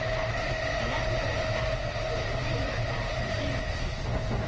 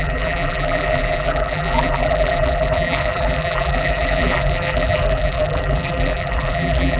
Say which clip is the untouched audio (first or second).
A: first